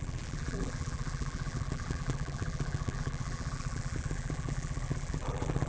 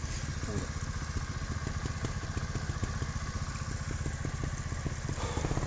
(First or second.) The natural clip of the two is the second